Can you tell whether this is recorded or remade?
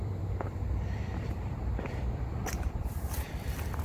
remade